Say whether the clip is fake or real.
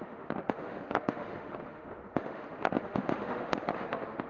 fake